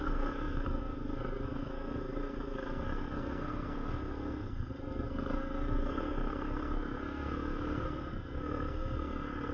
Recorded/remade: remade